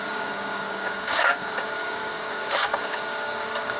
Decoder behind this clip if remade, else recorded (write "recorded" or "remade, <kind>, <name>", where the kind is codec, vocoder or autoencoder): remade, codec, DAC